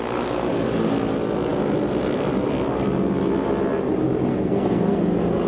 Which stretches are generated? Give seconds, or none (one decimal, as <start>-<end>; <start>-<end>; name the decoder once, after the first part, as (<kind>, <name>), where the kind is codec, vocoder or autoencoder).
4.3-5.1 (codec, SNAC)